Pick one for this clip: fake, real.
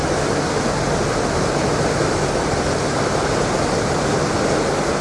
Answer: real